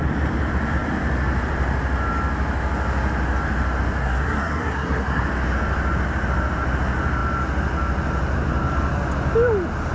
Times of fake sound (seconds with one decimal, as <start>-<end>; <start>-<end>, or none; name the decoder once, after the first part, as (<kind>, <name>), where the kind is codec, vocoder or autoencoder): 4.0-5.2 (codec, SNAC)